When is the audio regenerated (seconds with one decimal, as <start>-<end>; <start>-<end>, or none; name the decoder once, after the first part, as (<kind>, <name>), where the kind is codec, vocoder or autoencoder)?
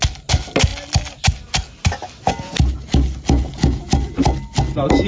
none